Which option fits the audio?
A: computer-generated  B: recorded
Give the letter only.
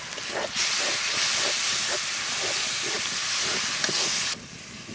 B